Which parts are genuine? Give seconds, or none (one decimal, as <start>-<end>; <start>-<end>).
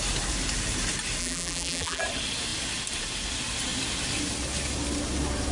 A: 0.0-1.2; 2.0-5.5